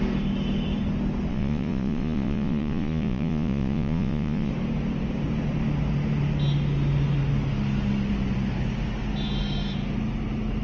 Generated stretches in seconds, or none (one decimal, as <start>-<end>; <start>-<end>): 1.3-4.5